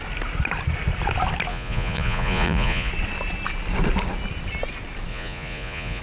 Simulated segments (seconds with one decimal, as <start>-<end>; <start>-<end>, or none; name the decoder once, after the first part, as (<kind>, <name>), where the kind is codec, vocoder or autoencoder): 1.5-2.9 (vocoder, Vocos); 5.1-6.0